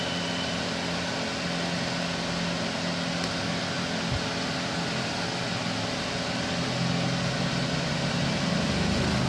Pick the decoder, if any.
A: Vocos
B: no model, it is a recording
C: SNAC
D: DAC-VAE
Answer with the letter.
B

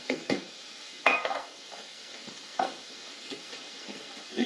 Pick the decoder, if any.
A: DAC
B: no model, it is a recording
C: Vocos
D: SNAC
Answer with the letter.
D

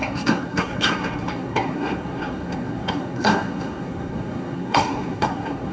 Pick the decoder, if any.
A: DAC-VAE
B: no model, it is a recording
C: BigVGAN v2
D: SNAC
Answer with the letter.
D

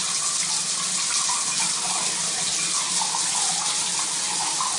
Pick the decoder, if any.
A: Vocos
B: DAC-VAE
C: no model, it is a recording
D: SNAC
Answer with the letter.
C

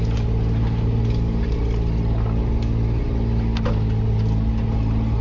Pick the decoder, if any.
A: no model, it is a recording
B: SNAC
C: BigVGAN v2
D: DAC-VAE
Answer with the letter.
A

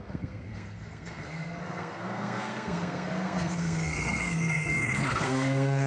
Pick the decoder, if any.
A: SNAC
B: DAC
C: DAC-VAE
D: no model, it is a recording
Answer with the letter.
A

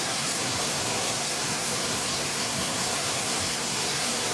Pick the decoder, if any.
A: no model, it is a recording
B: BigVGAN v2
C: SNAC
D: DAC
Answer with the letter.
C